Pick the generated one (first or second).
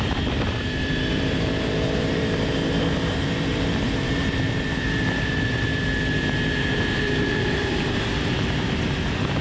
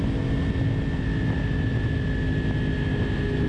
first